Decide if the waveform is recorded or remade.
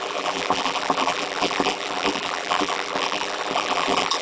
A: remade